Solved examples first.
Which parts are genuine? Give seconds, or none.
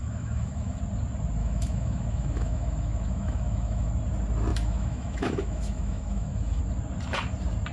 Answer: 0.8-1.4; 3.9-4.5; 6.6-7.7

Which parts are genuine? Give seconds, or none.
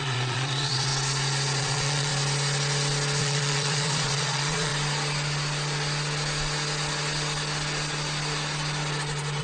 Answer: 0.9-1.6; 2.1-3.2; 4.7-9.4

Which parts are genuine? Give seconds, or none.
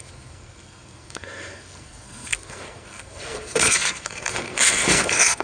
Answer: none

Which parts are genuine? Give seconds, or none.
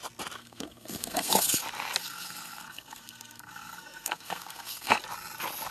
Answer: 0.0-0.4; 1.6-2.0; 5.0-5.7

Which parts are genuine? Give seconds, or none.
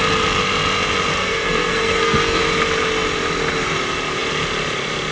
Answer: 0.0-1.2; 2.4-5.1